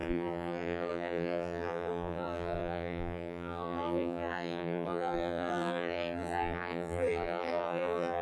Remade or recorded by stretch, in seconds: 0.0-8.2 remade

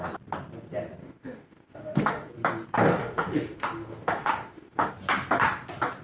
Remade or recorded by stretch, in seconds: 0.0-1.0 recorded; 1.0-2.3 remade; 2.3-3.0 recorded; 3.0-4.9 remade; 4.9-6.0 recorded

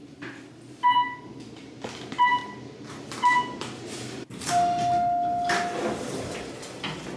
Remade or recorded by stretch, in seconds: 0.0-7.2 recorded

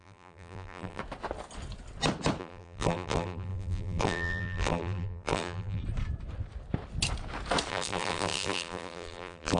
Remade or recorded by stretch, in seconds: 0.0-1.0 remade; 1.0-2.4 recorded; 2.4-5.8 remade; 5.8-7.7 recorded; 7.7-9.6 remade

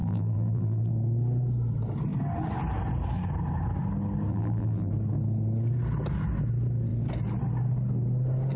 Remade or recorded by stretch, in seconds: 0.0-0.9 remade; 0.9-4.3 recorded; 4.3-4.9 remade; 4.9-8.6 recorded

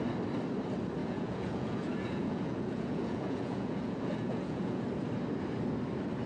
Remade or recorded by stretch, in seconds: 0.0-1.0 recorded; 1.0-4.8 remade; 4.8-6.3 recorded